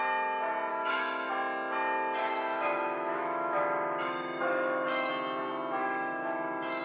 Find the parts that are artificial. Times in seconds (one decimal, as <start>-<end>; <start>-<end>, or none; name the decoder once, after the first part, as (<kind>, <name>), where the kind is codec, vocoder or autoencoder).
0.7-1.3 (autoencoder, DAC-VAE); 2.2-5.1; 5.8-6.8